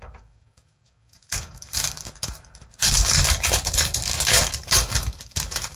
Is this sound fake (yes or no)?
yes